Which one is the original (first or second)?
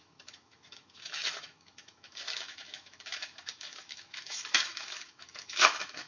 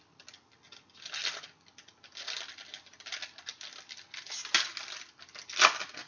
second